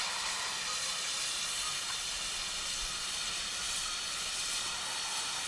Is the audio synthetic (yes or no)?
no